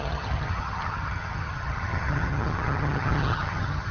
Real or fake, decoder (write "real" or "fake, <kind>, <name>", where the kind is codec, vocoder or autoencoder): fake, vocoder, HiFi-GAN